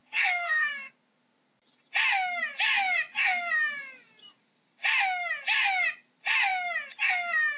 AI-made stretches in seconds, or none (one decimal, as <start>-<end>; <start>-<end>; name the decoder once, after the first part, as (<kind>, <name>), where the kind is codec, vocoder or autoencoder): 0.0-0.9 (codec, SNAC)